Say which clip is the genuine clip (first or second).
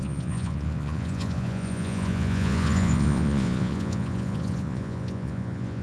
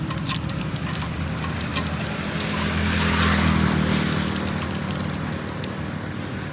second